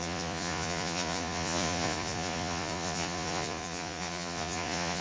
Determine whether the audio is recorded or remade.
remade